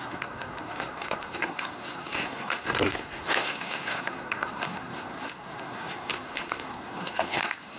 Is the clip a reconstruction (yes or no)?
yes